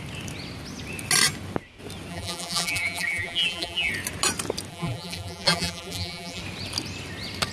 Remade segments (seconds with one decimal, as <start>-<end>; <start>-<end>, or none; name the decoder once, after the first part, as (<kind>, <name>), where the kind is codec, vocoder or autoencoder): 2.1-3.9 (vocoder, BigVGAN v2); 4.7-6.4